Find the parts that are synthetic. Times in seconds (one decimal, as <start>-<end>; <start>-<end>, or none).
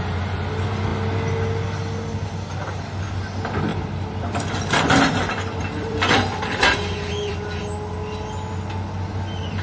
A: 3.7-7.6